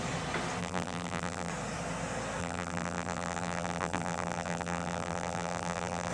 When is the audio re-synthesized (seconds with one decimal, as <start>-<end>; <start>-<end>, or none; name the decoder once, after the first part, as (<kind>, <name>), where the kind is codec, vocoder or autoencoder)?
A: 0.6-1.5 (vocoder, BigVGAN v2); 2.4-6.1